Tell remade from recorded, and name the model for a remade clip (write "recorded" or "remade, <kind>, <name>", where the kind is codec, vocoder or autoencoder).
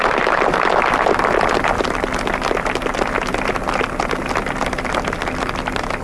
recorded